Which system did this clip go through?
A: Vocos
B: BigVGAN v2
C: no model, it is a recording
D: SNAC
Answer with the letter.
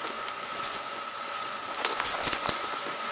A